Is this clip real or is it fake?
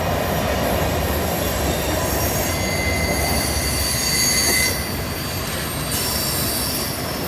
real